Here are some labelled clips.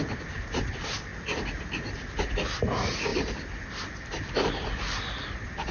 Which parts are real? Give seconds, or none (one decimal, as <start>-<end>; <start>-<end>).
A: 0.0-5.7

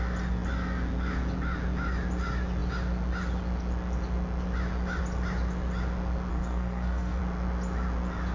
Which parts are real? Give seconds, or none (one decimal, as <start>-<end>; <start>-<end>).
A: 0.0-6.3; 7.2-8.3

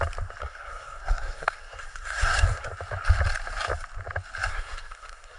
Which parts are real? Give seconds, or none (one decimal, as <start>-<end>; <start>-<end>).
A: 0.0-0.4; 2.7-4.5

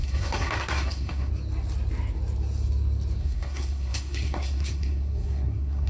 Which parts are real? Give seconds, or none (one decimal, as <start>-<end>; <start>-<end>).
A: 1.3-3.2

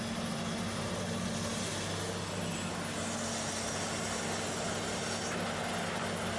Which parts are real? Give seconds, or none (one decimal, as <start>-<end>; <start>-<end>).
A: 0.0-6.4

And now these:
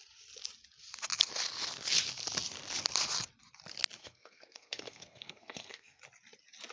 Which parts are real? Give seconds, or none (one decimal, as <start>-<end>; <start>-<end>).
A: 0.0-4.0; 6.0-6.7